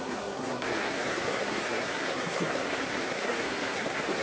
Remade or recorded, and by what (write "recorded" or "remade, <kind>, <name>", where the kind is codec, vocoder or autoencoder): remade, codec, SNAC